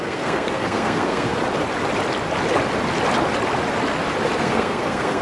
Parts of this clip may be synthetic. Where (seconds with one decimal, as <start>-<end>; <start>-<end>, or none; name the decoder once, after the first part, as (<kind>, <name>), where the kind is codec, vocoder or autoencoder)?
0.0-1.3 (codec, SNAC); 4.4-5.2